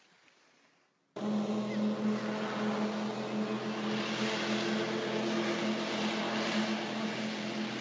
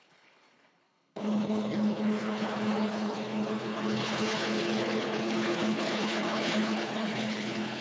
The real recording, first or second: first